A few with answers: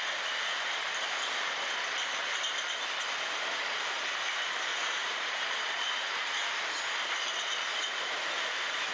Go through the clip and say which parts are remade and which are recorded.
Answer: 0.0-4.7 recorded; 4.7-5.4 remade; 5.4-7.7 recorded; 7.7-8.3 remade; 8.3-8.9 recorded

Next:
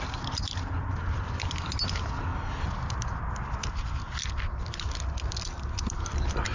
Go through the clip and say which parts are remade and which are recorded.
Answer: 0.0-6.5 recorded